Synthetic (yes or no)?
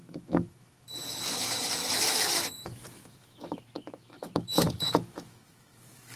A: yes